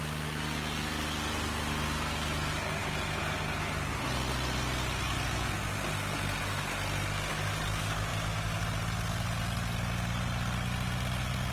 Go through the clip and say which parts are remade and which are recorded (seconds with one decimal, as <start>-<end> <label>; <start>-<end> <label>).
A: 0.0-11.5 recorded